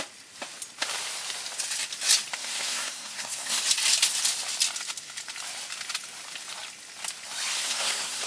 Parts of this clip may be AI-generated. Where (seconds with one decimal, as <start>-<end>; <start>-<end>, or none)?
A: 2.4-3.6; 7.5-8.3